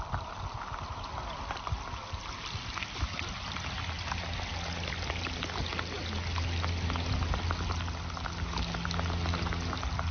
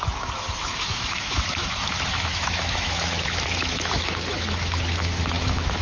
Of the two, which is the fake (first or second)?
second